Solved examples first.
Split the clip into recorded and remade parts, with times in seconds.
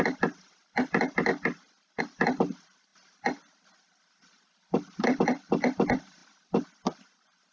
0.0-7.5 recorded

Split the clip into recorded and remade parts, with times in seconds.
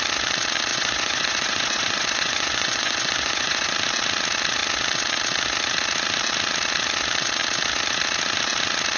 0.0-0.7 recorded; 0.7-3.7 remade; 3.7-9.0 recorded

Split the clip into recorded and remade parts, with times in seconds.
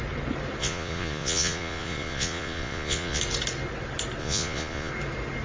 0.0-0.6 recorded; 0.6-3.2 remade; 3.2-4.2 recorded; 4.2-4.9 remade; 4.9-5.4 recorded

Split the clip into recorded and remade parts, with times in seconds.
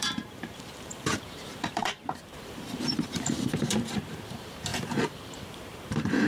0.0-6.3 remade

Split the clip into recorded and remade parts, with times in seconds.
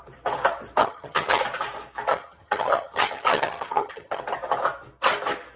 0.0-0.8 recorded; 0.8-1.4 remade; 1.4-2.1 recorded; 2.1-4.2 remade; 4.2-5.6 recorded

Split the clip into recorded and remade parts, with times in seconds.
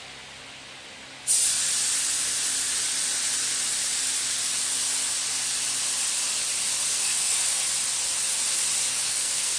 0.0-6.9 recorded; 6.9-7.6 remade; 7.6-8.9 recorded; 8.9-9.6 remade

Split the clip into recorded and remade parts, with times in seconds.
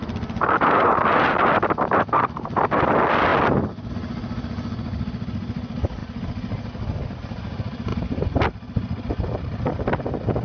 0.0-7.9 recorded; 7.9-8.4 remade; 8.4-10.4 recorded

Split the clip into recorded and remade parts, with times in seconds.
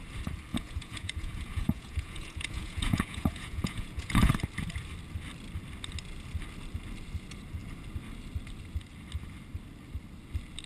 0.0-0.5 recorded; 0.5-4.3 remade; 4.3-10.7 recorded